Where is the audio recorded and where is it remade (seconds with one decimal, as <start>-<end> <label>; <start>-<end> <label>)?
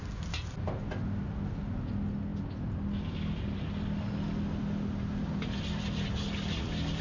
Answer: 0.0-7.0 recorded